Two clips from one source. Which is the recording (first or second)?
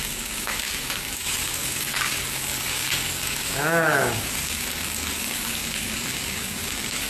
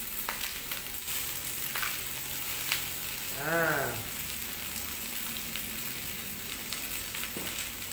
second